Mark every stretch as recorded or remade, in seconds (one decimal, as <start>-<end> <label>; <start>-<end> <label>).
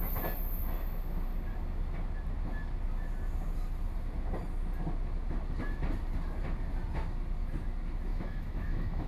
0.0-8.1 recorded; 8.1-9.1 remade